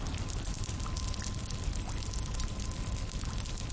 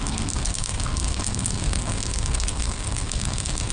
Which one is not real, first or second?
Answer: second